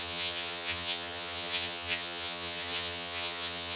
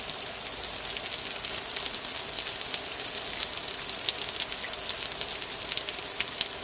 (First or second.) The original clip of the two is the second